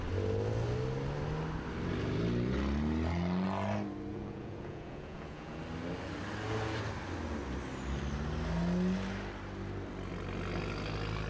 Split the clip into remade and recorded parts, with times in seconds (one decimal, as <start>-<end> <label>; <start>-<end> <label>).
0.0-4.1 recorded; 4.1-5.6 remade; 5.6-11.3 recorded